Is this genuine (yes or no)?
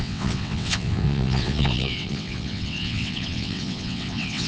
no